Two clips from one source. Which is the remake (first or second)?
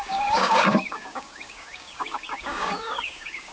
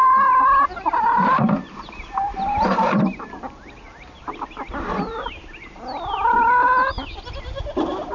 first